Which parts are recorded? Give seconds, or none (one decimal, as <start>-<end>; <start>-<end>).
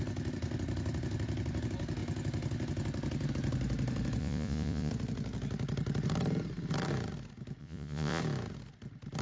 0.0-4.2; 4.9-7.6; 8.2-9.2